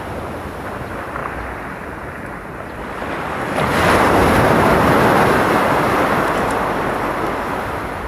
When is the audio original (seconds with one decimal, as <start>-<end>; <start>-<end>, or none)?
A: 0.0-8.1

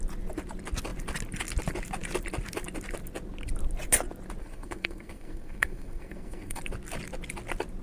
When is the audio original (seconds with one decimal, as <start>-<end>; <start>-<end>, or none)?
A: 0.0-4.4; 6.6-7.8

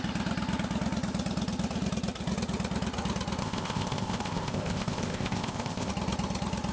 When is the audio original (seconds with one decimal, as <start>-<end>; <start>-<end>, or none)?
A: 0.0-3.4; 5.9-6.7

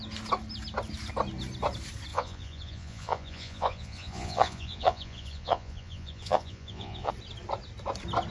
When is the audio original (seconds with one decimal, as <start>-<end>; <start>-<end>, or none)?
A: 0.0-2.1; 7.1-8.3

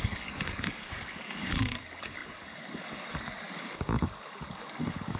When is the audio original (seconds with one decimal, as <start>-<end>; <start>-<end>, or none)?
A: none

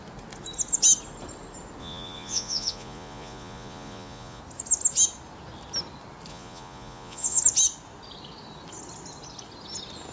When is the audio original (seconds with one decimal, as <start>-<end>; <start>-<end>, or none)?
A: 0.0-1.8; 4.4-6.3; 7.4-10.1

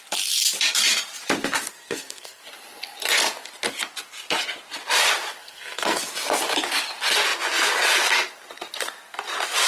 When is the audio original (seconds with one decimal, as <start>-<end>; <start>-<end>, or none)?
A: 0.0-1.7; 2.4-5.4; 6.0-9.7

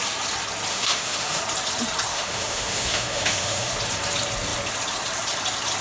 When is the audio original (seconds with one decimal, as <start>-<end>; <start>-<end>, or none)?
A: 0.0-0.7; 1.4-2.1; 3.7-5.8